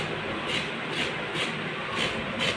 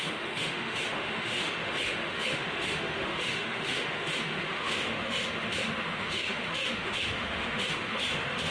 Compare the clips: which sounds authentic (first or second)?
first